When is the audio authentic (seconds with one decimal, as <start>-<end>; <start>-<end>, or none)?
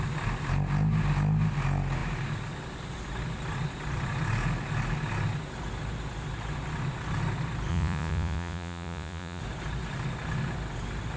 0.0-7.7; 9.4-11.2